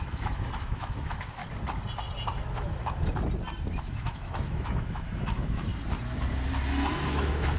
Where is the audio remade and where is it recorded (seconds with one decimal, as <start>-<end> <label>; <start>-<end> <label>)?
0.0-1.4 remade; 1.4-3.8 recorded; 3.8-5.7 remade; 5.7-7.1 recorded; 7.1-7.6 remade